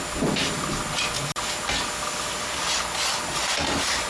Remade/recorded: recorded